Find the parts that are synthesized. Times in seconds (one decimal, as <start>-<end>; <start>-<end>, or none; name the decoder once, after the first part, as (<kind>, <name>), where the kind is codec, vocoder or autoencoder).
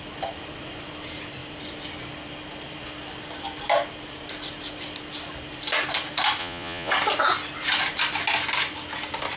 6.4-6.9 (vocoder, Vocos)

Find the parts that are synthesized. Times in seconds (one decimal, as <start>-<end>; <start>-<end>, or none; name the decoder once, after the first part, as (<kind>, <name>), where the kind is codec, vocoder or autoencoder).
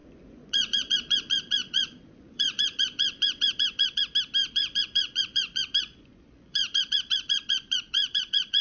0.0-4.0 (vocoder, Vocos); 4.4-8.6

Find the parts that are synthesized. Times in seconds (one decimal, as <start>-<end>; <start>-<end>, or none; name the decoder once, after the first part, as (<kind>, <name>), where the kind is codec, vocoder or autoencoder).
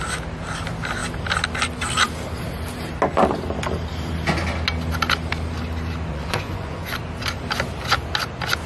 6.1-6.9 (vocoder, Vocos)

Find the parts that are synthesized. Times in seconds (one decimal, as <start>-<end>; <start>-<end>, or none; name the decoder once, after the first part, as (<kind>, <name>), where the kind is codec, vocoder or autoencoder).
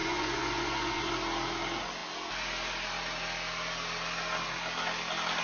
0.0-1.1 (vocoder, Vocos)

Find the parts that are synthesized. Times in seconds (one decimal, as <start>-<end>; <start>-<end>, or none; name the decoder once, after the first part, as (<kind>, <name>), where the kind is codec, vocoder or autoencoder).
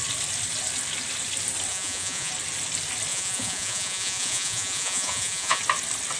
1.7-2.3 (vocoder, Vocos); 3.1-5.6